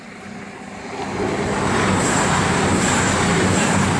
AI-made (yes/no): no